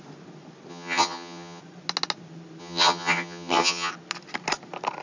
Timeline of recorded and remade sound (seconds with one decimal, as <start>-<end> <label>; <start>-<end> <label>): 0.0-0.7 recorded; 0.7-1.6 remade; 1.6-2.6 recorded; 2.6-3.9 remade; 3.9-5.0 recorded